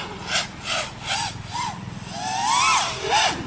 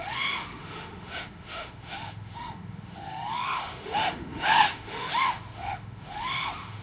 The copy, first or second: second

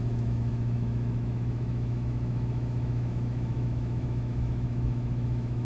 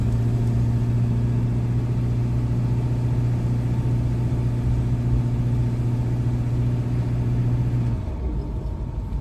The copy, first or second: first